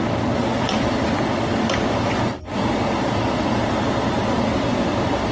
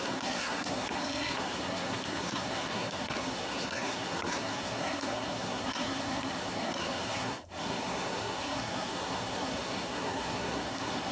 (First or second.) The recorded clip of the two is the first